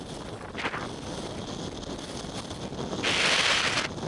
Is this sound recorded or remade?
recorded